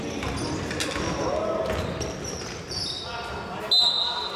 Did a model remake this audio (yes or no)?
no